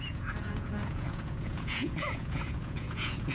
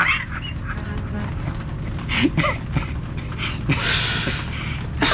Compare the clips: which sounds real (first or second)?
second